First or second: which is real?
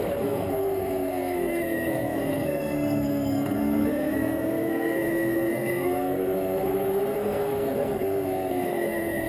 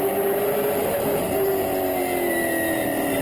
second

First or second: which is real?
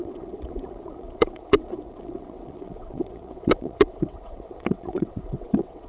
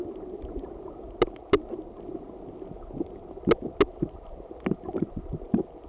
second